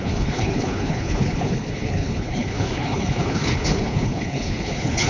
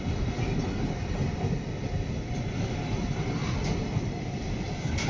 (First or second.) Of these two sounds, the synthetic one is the first